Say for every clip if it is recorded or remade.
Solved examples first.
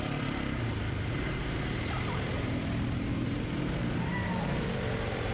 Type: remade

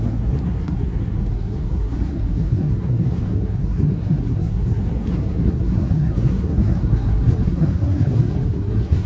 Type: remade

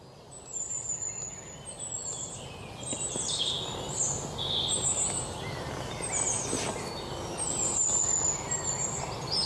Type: recorded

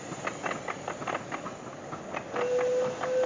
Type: recorded